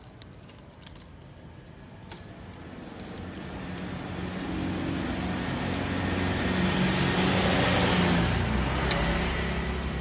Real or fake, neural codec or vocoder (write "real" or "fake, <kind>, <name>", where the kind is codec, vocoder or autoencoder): real